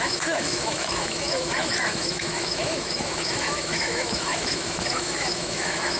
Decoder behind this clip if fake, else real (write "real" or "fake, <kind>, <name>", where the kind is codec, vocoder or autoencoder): fake, autoencoder, DAC-VAE